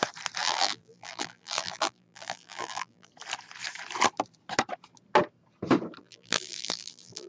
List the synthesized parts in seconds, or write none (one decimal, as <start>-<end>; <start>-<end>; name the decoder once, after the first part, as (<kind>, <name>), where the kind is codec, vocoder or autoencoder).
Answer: 0.4-3.1 (vocoder, BigVGAN v2); 6.0-7.3